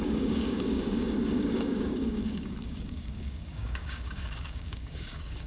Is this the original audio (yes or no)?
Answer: no